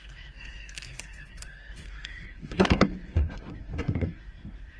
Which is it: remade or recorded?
remade